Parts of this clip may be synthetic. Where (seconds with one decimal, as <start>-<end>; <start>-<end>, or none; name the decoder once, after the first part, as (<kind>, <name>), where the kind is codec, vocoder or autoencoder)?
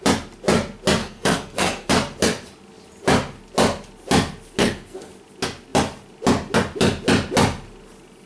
1.0-1.9 (codec, SNAC); 4.6-5.1